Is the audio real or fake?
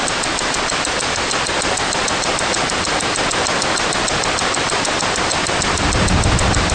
real